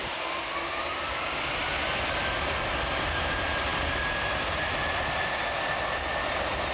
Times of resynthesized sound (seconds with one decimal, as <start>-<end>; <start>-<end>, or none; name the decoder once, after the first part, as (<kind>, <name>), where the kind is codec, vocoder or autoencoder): none